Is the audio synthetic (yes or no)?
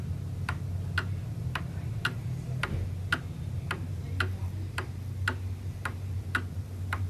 no